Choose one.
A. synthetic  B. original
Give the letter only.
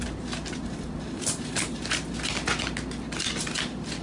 B